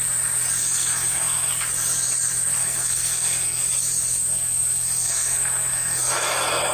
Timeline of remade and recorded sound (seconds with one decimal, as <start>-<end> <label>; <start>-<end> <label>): 0.0-0.6 recorded; 0.6-1.5 remade; 1.5-2.6 recorded; 2.6-3.6 remade; 3.6-4.3 recorded; 4.3-6.1 remade; 6.1-6.7 recorded

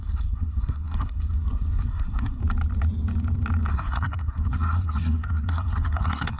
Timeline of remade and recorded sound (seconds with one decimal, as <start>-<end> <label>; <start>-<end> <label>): 0.0-2.4 remade; 2.4-3.7 recorded; 3.7-6.4 remade

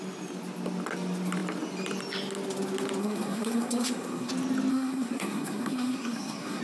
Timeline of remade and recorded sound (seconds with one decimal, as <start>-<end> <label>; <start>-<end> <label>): 0.0-3.0 recorded; 3.0-4.3 remade; 4.3-4.7 recorded; 4.7-6.6 remade

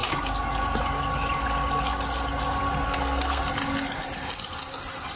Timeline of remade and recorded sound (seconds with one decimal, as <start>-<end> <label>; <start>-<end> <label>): 0.0-2.8 recorded; 2.8-3.4 remade; 3.4-5.2 recorded

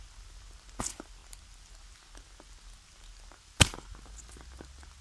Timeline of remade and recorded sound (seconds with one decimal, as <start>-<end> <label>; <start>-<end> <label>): 0.0-5.0 recorded

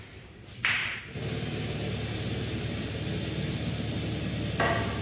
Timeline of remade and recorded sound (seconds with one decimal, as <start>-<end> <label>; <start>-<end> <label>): 0.0-5.0 recorded

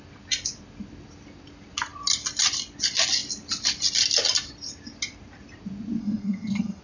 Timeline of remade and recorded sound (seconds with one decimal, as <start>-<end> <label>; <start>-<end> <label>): 0.0-6.0 recorded; 6.0-6.8 remade

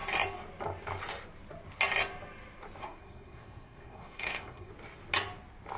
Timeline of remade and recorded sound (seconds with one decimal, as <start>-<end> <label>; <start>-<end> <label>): 0.0-2.8 recorded; 2.8-4.7 remade; 4.7-5.8 recorded